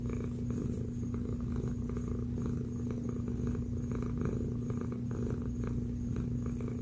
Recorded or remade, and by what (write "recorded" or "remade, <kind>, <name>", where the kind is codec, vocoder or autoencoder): recorded